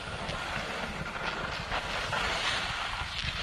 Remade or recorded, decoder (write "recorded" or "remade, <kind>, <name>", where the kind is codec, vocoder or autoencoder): recorded